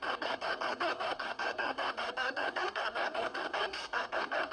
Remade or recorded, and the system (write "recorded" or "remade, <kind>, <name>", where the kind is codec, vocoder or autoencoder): remade, codec, SNAC